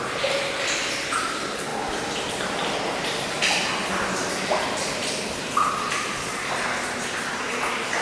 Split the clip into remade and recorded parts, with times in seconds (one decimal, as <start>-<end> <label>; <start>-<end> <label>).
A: 0.0-1.7 recorded; 1.7-6.5 remade; 6.5-8.0 recorded